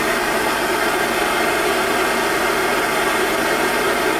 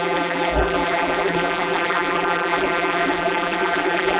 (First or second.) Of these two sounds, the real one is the first